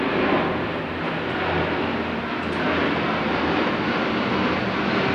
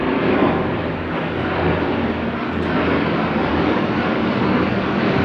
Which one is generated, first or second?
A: second